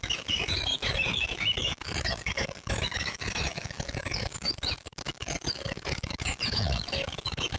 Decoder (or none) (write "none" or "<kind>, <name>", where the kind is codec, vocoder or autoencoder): autoencoder, DAC-VAE